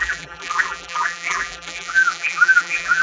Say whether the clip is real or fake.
fake